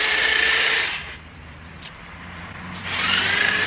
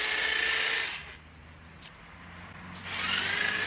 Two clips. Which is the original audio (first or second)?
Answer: second